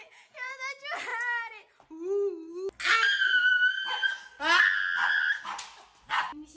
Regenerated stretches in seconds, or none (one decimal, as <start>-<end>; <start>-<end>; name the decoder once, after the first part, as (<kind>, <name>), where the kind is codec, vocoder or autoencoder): 0.0-0.5 (vocoder, Vocos)